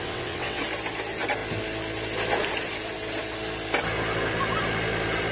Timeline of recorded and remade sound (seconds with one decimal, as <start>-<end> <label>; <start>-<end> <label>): 0.0-0.6 remade; 0.6-5.3 recorded